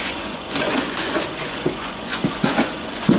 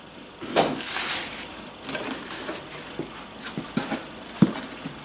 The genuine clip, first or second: second